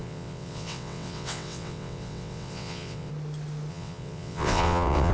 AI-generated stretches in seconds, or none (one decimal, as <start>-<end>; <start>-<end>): 0.0-3.1; 3.7-5.1